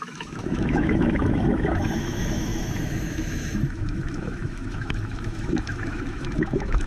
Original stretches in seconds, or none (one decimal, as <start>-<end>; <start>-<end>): none